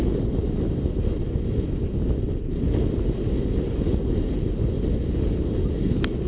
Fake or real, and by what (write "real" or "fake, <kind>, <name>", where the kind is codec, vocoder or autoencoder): real